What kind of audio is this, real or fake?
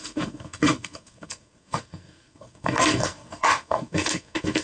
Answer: fake